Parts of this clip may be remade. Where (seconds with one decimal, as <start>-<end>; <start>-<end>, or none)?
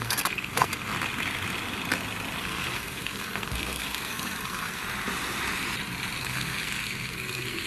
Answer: 0.0-0.9; 2.4-4.8; 6.2-7.7